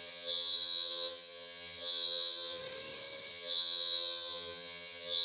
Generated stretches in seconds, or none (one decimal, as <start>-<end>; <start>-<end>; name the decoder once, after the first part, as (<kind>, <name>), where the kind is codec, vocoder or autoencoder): 0.0-2.6 (vocoder, HiFi-GAN); 3.3-5.2